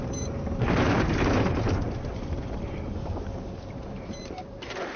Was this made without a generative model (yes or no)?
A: no